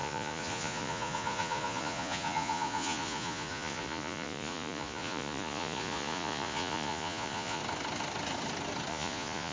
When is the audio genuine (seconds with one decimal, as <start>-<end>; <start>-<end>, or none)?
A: 7.6-8.9